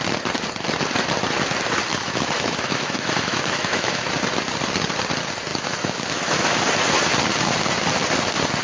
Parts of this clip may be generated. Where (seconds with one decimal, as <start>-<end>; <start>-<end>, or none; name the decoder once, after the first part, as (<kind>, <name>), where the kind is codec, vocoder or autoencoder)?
1.9-4.1 (autoencoder, DAC-VAE); 5.5-6.6